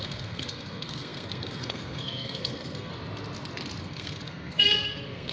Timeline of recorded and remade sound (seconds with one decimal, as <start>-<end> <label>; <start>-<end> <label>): 0.0-2.9 remade; 2.9-3.8 recorded; 3.8-5.3 remade